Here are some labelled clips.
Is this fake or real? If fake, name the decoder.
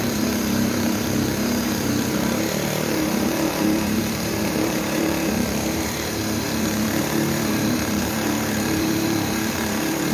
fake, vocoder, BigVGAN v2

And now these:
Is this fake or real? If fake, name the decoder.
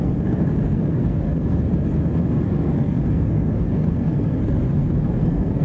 fake, codec, SNAC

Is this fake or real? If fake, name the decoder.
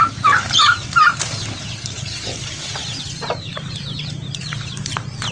fake, vocoder, BigVGAN v2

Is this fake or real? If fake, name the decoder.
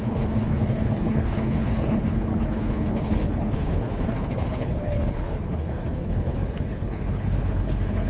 fake, codec, HILCodec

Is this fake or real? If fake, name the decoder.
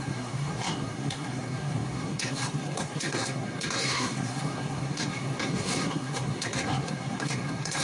fake, codec, SNAC